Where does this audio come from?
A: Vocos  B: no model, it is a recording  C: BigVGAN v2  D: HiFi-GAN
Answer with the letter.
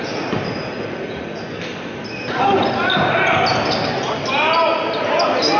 B